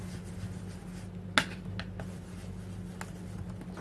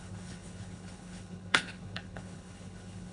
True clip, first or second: first